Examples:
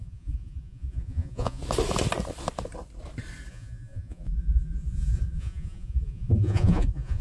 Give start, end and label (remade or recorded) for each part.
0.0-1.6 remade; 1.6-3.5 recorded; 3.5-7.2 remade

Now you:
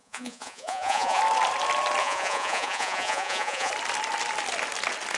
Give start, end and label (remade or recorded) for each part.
0.0-1.2 remade; 1.2-2.0 recorded; 2.0-3.7 remade; 3.7-5.2 recorded

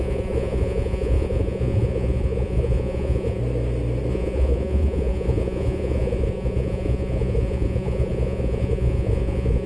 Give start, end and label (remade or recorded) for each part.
0.0-3.4 remade; 3.4-4.1 recorded; 4.1-9.7 remade

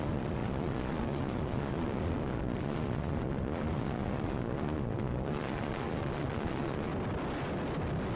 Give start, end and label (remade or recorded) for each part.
0.0-6.9 remade; 6.9-8.2 recorded